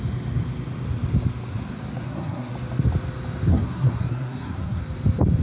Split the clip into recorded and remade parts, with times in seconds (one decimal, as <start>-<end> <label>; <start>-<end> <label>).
0.0-2.0 recorded; 2.0-2.5 remade; 2.5-3.5 recorded; 3.5-4.8 remade; 4.8-5.4 recorded